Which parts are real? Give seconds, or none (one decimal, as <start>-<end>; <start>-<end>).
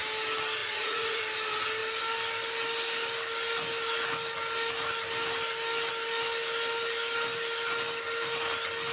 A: 0.0-0.6; 1.2-8.9